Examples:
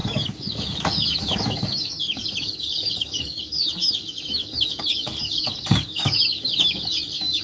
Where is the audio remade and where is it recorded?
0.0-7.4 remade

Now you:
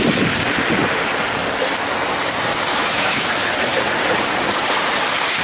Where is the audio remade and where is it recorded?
0.0-2.7 recorded; 2.7-3.3 remade; 3.3-5.4 recorded

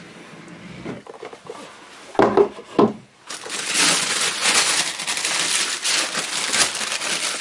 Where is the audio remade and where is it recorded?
0.0-3.9 recorded; 3.9-4.7 remade; 4.7-7.4 recorded

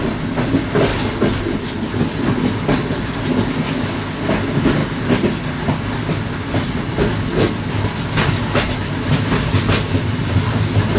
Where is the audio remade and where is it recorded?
0.0-11.0 recorded